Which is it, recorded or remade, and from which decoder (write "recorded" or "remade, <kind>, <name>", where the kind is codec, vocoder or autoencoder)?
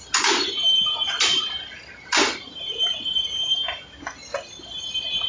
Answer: recorded